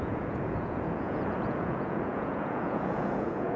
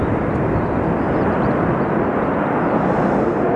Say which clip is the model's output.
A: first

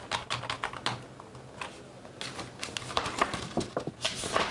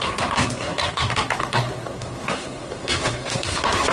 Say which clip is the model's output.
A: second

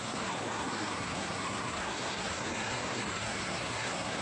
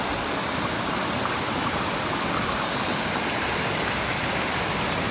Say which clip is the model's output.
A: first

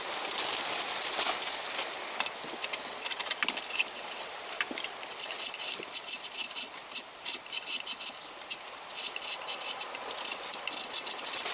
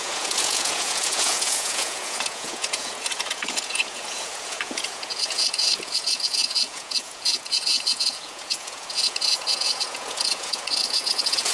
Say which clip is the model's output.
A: second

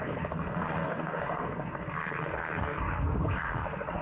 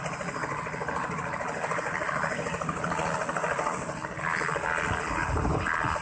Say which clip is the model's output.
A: first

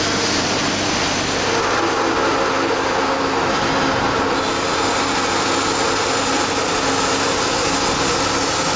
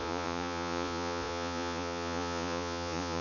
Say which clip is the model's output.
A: second